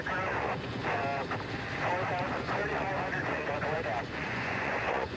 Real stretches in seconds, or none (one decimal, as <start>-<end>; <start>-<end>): 0.8-2.2